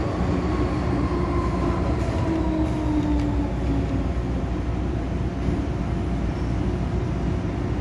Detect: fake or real real